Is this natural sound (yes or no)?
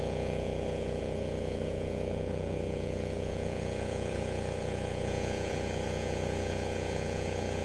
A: no